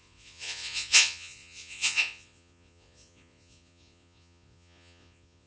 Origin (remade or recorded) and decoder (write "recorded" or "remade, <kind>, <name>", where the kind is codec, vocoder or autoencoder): remade, vocoder, Vocos